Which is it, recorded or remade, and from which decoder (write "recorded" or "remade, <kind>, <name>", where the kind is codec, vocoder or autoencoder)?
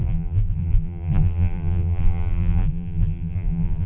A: remade, vocoder, BigVGAN v2